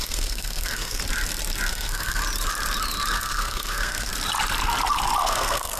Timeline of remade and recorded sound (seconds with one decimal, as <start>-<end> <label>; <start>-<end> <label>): 0.0-1.0 remade; 1.0-1.7 recorded; 1.7-2.2 remade; 2.2-3.1 recorded; 3.1-4.1 remade; 4.1-5.2 recorded; 5.2-5.8 remade